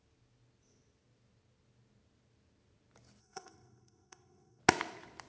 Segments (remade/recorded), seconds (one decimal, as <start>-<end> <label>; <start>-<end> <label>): 0.0-3.2 recorded; 3.2-4.6 remade; 4.6-5.3 recorded